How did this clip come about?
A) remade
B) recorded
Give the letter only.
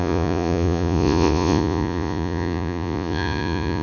A